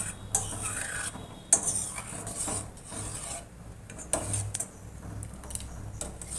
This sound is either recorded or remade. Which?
recorded